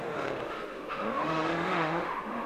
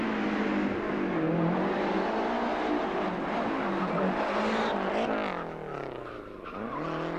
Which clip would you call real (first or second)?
second